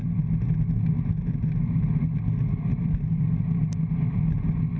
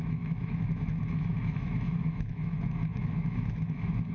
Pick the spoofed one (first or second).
second